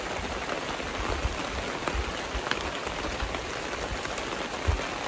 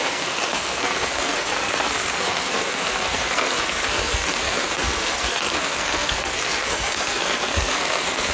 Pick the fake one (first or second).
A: second